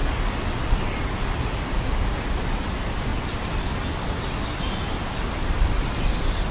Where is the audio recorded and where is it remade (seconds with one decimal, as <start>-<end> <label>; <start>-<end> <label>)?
0.0-6.5 recorded